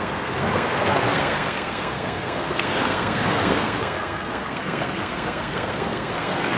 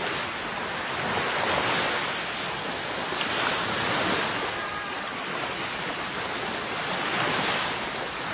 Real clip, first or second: second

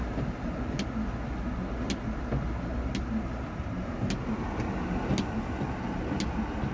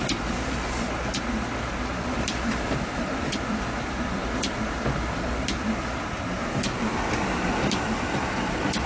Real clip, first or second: first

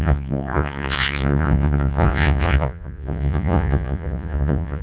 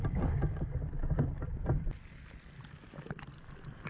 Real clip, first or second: second